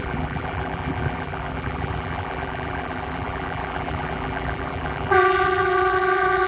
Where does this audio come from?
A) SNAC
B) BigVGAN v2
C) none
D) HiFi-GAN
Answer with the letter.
B